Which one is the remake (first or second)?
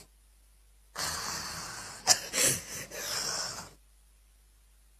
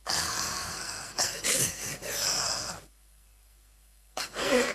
second